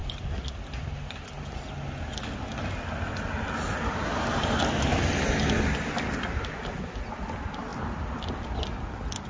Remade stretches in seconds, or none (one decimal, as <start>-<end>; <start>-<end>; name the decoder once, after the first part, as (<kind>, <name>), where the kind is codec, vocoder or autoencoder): none